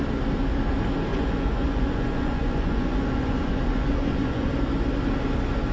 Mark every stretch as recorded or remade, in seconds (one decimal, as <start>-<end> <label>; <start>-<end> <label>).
0.0-1.1 recorded; 1.1-4.5 remade; 4.5-5.7 recorded